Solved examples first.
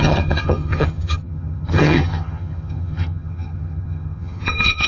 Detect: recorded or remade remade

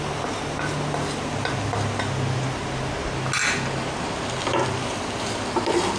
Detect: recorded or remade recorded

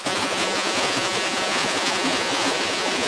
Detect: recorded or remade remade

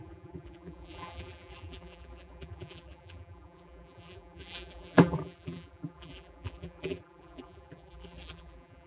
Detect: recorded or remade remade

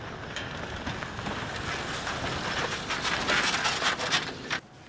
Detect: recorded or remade recorded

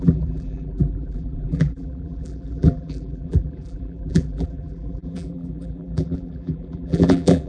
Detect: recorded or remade remade